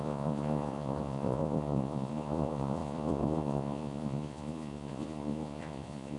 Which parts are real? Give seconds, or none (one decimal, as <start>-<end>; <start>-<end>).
none